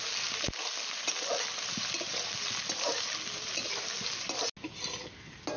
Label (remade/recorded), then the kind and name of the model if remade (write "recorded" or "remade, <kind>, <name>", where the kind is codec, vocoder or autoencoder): recorded